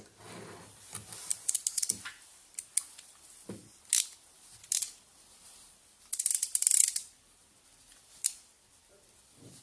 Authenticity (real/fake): real